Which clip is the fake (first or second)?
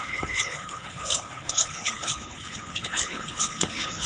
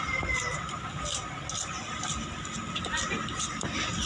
first